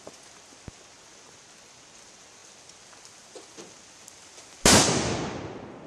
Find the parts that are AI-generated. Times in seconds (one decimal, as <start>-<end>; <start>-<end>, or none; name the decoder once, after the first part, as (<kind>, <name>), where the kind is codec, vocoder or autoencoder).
none